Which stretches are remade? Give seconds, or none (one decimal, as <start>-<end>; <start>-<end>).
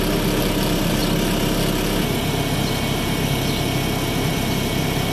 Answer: 0.0-1.0; 4.1-5.1